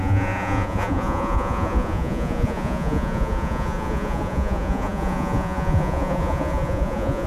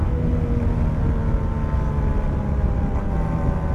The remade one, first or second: first